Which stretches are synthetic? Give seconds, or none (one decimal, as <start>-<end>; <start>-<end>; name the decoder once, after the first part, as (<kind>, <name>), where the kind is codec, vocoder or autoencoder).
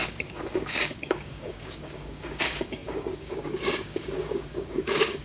0.0-5.2 (codec, DAC)